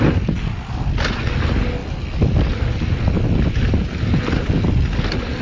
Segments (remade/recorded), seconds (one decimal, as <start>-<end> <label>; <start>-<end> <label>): 0.0-5.4 recorded